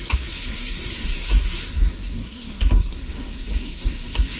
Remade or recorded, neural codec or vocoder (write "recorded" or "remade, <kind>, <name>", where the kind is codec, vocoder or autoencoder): remade, codec, SNAC